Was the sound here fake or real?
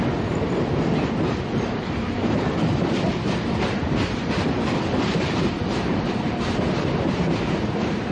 fake